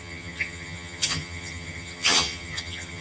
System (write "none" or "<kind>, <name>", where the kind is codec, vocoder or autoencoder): vocoder, HiFi-GAN